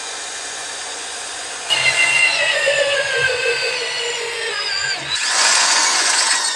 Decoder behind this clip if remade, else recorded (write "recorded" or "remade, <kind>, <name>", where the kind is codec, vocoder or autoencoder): remade, vocoder, Vocos